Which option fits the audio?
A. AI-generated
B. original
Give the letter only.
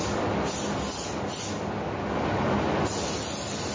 B